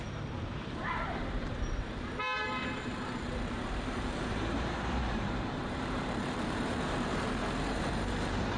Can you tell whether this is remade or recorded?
remade